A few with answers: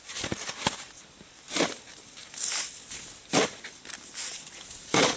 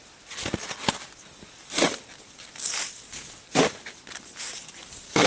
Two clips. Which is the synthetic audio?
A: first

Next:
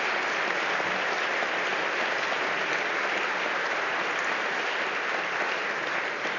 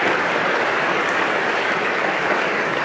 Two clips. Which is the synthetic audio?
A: second